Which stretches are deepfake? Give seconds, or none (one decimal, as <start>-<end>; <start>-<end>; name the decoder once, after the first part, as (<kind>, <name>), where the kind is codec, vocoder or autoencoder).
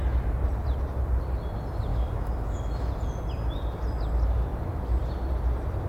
1.9-2.9 (autoencoder, DAC-VAE)